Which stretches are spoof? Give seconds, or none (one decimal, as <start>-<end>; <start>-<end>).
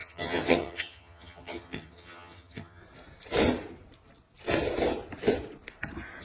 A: 0.0-2.8